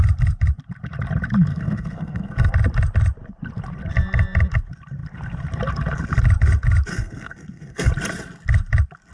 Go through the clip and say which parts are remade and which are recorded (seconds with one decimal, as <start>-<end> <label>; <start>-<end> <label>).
0.0-1.5 recorded; 1.5-2.5 remade; 2.5-6.9 recorded; 6.9-7.9 remade; 7.9-9.1 recorded